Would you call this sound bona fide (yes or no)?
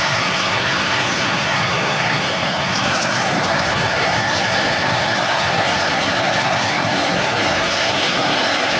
no